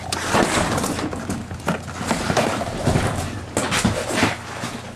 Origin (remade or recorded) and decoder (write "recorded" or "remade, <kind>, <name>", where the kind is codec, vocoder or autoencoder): recorded